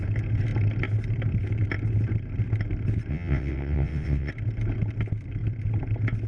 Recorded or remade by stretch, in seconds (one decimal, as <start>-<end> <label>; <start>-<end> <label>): 0.0-3.1 recorded; 3.1-4.3 remade; 4.3-6.3 recorded